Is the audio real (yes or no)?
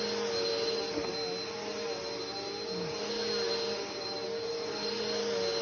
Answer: yes